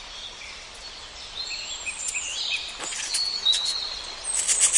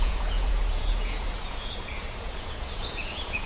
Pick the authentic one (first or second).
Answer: first